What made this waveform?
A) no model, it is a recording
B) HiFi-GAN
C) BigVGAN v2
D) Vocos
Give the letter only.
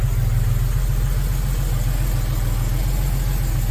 A